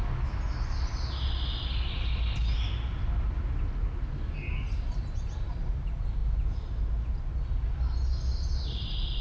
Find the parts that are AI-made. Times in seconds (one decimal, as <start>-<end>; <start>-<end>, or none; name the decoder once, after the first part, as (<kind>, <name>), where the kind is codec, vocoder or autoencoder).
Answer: none